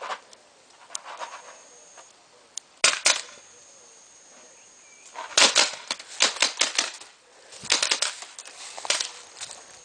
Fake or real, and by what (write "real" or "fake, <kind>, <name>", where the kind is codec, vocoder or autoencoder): real